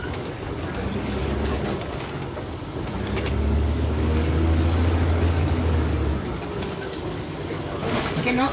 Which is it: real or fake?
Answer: fake